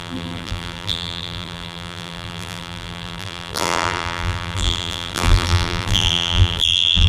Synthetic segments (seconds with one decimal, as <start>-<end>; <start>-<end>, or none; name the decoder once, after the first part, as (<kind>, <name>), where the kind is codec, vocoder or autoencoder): 0.0-7.1 (vocoder, BigVGAN v2)

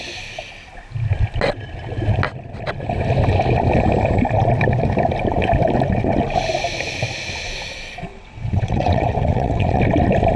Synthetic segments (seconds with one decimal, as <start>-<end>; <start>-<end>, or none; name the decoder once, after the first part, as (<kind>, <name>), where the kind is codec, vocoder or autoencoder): 8.1-9.8 (vocoder, WaveNeXt)

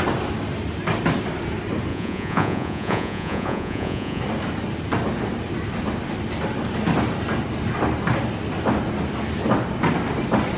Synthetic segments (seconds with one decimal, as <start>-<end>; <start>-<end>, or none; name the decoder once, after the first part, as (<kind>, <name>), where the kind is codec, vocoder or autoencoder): 1.9-4.2 (vocoder, Vocos)